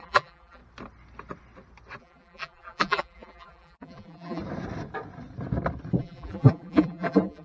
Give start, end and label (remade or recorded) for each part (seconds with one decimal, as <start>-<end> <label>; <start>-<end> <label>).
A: 0.0-0.6 remade; 0.6-2.0 recorded; 2.0-4.4 remade; 4.4-6.0 recorded; 6.0-7.4 remade